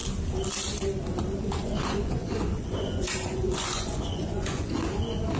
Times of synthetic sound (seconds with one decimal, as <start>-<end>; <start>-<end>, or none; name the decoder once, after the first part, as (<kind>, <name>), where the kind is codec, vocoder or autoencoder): 1.6-4.8 (vocoder, Vocos)